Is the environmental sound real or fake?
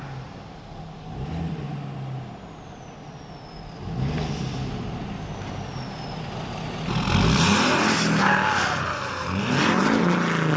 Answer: real